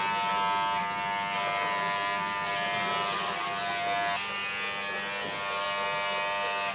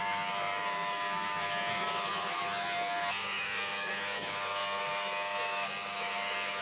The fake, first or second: second